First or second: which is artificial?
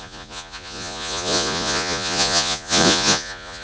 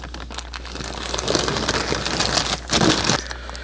first